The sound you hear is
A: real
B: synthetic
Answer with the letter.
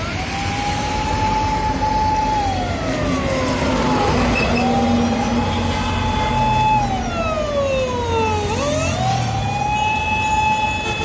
A